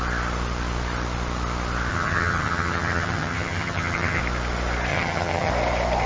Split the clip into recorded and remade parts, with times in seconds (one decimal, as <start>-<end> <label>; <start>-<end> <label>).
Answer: 0.0-1.9 recorded; 1.9-4.2 remade; 4.2-4.9 recorded; 4.9-5.5 remade; 5.5-6.1 recorded